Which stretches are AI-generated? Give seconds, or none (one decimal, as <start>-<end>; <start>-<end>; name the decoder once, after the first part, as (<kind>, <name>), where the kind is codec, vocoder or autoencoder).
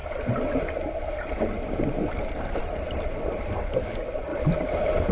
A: 0.0-2.6 (vocoder, BigVGAN v2); 4.3-5.1